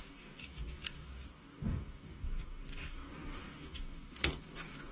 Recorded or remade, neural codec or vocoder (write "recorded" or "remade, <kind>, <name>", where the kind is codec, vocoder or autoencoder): remade, codec, DAC